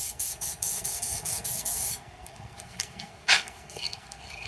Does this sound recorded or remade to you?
remade